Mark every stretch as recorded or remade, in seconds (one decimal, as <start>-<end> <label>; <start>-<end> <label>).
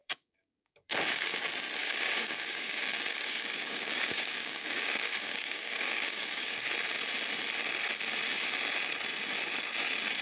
0.0-1.4 remade; 1.4-1.8 recorded; 1.8-6.7 remade; 6.7-10.2 recorded